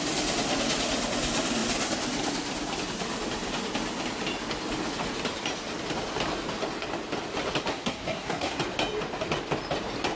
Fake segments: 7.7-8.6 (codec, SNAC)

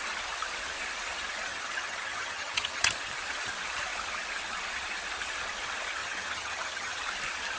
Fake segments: 1.5-2.9 (vocoder, HiFi-GAN); 6.0-7.0